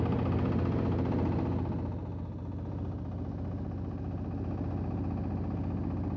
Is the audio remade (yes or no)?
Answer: no